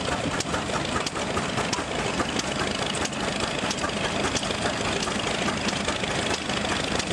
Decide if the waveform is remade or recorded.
recorded